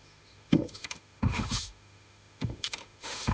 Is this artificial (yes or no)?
yes